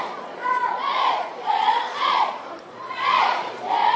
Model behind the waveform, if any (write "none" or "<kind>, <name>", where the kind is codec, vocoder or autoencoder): vocoder, Vocos